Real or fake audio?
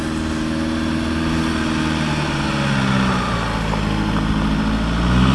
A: real